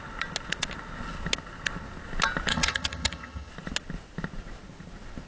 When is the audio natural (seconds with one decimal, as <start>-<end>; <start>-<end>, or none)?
0.0-2.5; 3.5-5.3

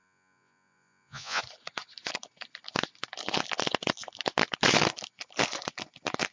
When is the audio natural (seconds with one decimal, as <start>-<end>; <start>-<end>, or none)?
1.4-6.3

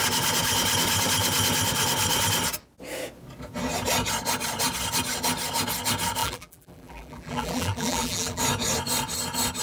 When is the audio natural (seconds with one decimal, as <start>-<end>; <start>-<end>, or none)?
0.0-6.2; 8.4-9.6

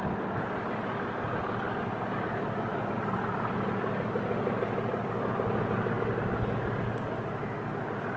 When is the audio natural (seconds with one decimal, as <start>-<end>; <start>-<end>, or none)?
0.0-8.2

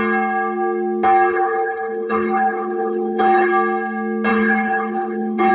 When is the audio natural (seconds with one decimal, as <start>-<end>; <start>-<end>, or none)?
0.0-1.3; 3.5-4.3

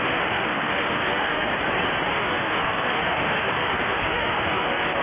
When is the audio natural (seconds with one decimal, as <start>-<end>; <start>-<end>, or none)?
1.5-2.1

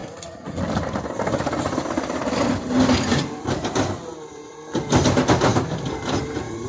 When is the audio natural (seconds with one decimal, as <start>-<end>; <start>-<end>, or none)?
0.6-6.7